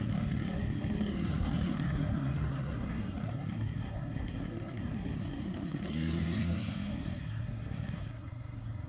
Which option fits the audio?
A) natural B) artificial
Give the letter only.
B